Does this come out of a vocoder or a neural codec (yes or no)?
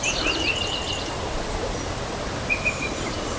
no